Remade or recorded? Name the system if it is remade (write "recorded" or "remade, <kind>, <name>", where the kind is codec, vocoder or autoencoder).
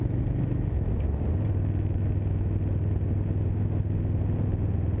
recorded